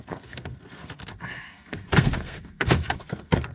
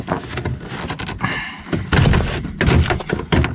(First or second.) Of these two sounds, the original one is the second